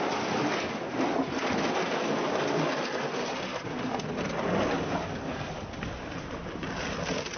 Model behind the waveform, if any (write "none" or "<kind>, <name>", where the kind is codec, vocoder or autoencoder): none